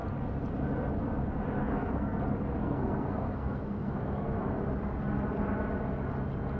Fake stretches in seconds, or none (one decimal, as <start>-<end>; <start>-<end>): 1.6-2.2; 2.6-4.4